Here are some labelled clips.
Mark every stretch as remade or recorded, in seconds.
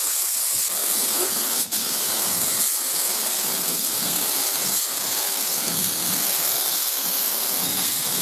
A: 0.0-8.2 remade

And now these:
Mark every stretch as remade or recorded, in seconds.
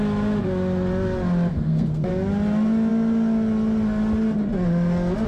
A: 0.0-1.5 recorded; 1.5-2.1 remade; 2.1-5.3 recorded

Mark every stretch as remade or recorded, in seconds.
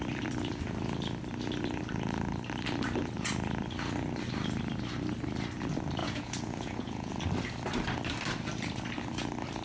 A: 0.0-6.0 recorded; 6.0-7.1 remade; 7.1-9.6 recorded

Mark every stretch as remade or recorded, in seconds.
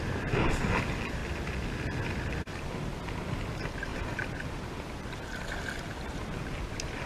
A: 0.0-7.1 recorded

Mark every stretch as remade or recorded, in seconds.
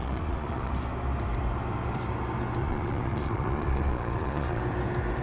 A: 0.0-0.7 remade; 0.7-2.6 recorded; 2.6-4.6 remade; 4.6-5.2 recorded